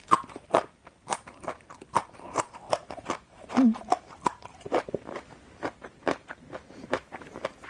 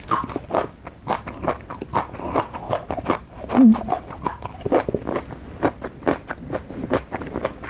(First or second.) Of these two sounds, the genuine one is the second